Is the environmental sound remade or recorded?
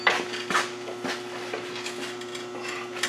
recorded